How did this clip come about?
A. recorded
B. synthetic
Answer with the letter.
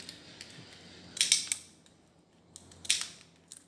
A